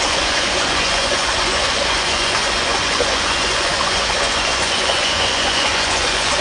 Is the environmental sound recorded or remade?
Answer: remade